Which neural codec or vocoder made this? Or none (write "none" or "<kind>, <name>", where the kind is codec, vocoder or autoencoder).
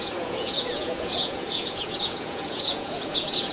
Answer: vocoder, Vocos